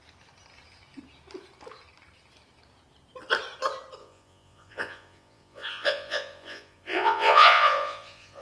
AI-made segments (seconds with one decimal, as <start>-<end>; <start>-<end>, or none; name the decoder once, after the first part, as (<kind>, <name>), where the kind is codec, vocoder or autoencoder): 4.0-8.4 (vocoder, Vocos)